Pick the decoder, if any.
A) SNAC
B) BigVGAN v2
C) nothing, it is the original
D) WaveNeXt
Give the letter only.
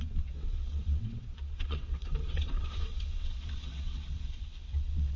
D